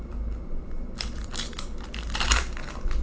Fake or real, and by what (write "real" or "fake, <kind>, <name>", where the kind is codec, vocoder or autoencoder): real